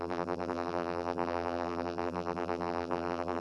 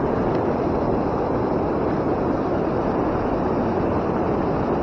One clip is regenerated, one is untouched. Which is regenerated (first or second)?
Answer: first